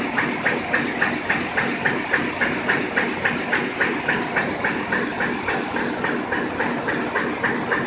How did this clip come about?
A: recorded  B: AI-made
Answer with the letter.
A